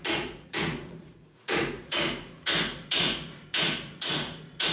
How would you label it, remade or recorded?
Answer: remade